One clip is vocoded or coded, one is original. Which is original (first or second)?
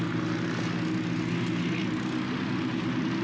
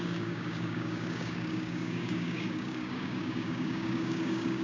first